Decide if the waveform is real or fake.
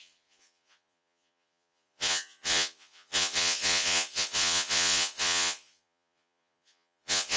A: fake